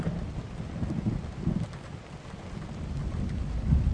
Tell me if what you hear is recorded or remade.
recorded